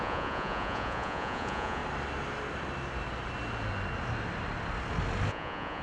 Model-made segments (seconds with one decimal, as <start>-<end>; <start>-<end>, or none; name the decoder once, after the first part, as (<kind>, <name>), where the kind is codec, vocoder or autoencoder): 0.0-1.8 (vocoder, Vocos); 5.3-5.8